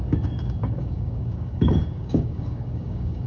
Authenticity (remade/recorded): remade